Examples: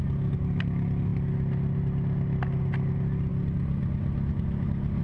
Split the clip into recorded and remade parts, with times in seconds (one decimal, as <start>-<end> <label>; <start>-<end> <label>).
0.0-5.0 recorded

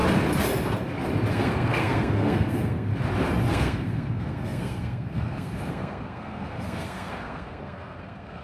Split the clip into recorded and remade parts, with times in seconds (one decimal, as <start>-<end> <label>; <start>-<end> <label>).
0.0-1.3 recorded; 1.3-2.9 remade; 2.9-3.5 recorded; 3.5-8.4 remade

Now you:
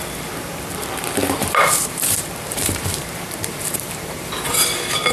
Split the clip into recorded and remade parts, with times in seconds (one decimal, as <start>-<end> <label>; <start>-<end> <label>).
0.0-1.2 recorded; 1.2-4.3 remade; 4.3-5.1 recorded

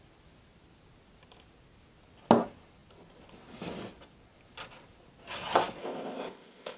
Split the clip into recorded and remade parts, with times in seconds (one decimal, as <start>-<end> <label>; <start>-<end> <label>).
0.0-5.8 recorded; 5.8-6.8 remade

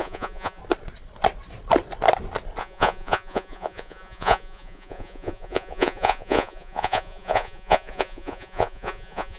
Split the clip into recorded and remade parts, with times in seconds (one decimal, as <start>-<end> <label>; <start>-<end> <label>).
0.0-0.6 remade; 0.6-2.6 recorded; 2.6-9.4 remade

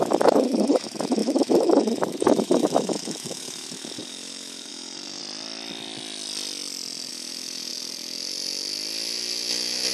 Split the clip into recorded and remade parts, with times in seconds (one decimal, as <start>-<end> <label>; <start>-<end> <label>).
0.0-5.2 remade; 5.2-7.1 recorded; 7.1-7.7 remade; 7.7-9.9 recorded

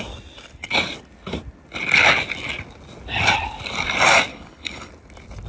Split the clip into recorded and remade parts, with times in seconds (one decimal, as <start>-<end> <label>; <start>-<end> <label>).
0.0-4.3 recorded; 4.3-4.9 remade; 4.9-5.5 recorded

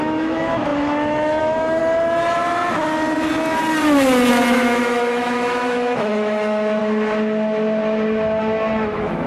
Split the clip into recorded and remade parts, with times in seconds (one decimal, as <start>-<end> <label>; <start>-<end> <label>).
0.0-1.8 remade; 1.8-4.3 recorded; 4.3-6.8 remade; 6.8-8.4 recorded; 8.4-9.3 remade